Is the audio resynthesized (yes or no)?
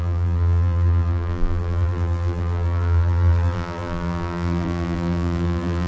yes